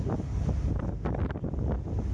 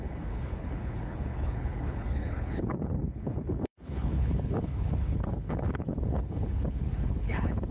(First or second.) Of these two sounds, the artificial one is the second